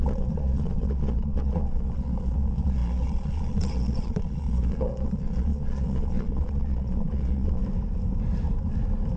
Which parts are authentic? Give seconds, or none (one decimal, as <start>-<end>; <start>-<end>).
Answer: 7.6-9.2